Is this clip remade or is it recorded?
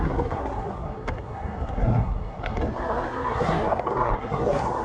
remade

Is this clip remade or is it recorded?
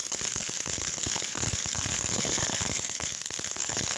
remade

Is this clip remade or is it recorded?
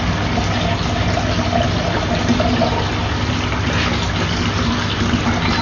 recorded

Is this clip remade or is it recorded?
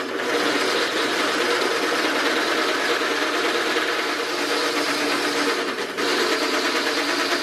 recorded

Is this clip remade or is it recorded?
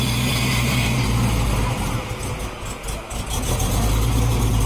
recorded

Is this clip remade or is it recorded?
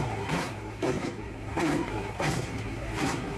remade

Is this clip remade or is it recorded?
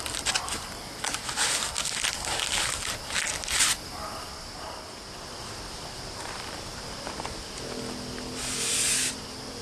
recorded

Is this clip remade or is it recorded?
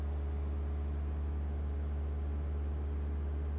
recorded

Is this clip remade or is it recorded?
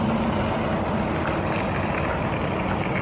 recorded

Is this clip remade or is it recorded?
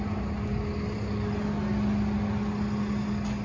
recorded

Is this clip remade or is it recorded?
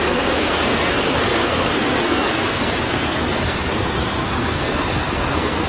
remade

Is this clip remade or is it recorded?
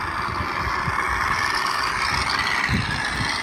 recorded